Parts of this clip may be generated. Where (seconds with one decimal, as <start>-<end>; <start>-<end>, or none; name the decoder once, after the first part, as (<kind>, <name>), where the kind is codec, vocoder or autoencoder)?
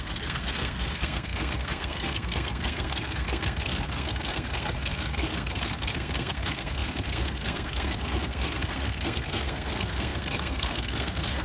0.0-11.4 (codec, SNAC)